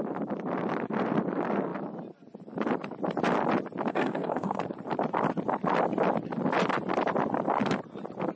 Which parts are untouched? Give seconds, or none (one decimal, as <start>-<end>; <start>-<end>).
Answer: 0.0-3.9; 4.6-8.4